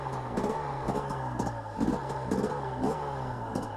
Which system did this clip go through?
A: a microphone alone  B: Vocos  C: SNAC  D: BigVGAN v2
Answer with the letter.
C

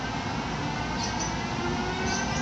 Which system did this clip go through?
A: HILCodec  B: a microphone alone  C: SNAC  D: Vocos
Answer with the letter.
B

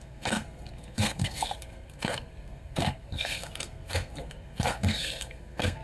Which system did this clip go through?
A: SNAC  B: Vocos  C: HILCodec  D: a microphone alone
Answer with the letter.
A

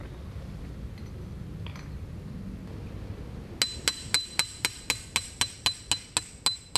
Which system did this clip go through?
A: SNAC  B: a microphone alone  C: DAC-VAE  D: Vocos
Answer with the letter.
B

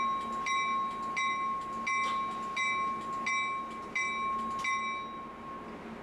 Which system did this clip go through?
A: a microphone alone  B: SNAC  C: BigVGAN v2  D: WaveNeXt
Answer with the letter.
A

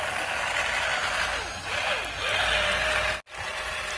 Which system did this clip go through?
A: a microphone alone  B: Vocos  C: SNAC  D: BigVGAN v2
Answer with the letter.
A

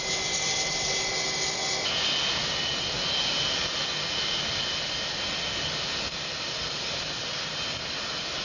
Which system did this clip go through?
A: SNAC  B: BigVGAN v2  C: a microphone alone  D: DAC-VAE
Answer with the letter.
C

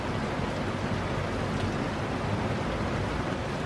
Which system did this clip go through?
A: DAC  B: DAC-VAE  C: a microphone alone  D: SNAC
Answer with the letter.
C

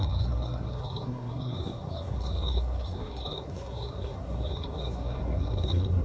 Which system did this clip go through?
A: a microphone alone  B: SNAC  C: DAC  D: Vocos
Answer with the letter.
B